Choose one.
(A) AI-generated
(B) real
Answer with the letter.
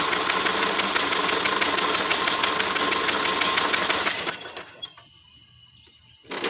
B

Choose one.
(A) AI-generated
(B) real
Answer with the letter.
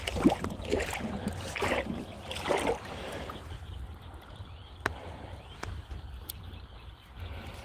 B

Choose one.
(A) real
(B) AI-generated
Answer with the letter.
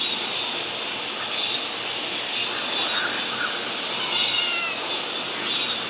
A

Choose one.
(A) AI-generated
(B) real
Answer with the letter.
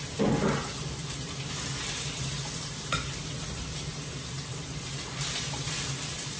B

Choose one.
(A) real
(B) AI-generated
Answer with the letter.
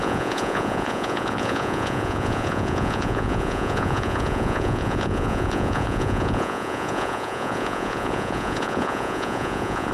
B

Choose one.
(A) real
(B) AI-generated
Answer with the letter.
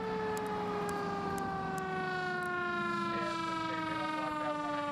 A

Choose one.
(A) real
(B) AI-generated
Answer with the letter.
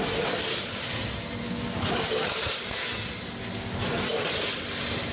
A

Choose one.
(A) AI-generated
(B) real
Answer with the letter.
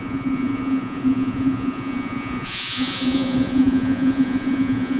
A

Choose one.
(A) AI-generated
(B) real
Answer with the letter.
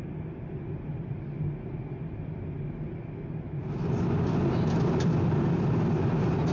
B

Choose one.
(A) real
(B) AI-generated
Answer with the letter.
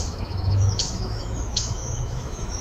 B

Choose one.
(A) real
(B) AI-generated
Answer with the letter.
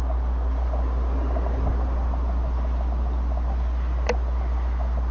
A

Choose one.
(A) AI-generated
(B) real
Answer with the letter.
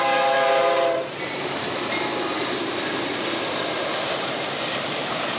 A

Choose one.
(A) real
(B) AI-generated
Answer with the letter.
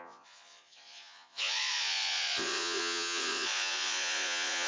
B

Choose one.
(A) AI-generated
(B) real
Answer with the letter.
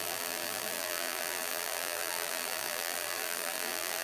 A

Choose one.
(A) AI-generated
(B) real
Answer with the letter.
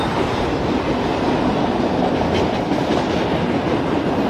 B